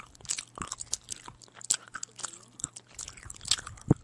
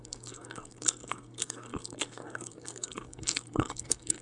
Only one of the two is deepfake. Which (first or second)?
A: second